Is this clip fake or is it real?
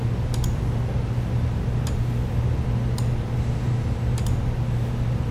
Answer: real